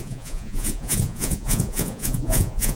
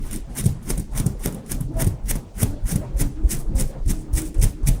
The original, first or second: second